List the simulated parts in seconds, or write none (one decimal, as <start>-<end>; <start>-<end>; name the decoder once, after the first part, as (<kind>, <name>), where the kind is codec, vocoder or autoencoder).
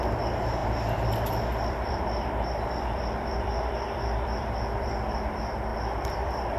0.0-6.6 (vocoder, BigVGAN v2)